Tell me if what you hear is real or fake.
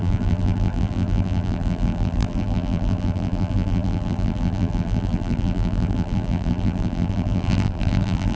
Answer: fake